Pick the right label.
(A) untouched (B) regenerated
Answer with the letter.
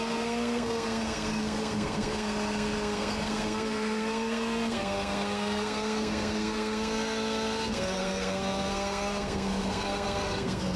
B